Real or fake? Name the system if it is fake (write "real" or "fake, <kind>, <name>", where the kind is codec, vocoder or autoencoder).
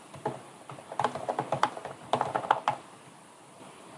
real